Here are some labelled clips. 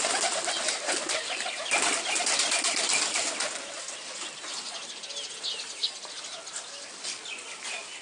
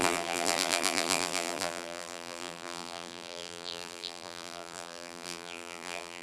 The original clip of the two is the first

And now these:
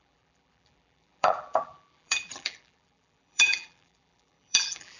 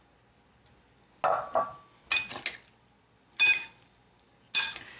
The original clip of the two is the second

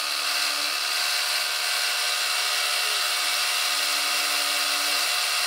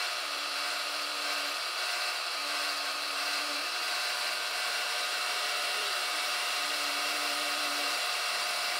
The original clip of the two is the first